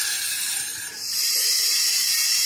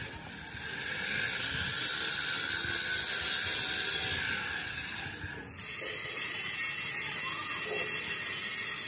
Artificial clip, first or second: first